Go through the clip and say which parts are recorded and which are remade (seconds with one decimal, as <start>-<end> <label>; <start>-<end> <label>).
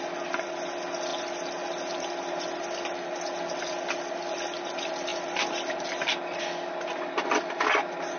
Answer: 0.0-5.1 recorded; 5.1-6.4 remade; 6.4-8.2 recorded